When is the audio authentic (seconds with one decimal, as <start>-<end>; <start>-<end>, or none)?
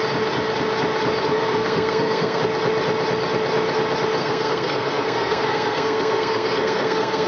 0.0-1.3; 2.4-4.2